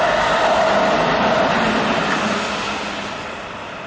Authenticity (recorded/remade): recorded